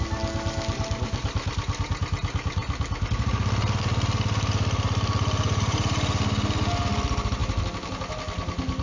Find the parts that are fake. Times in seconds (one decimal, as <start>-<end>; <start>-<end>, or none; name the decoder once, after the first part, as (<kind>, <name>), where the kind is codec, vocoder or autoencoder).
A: none